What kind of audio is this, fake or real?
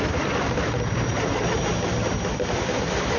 real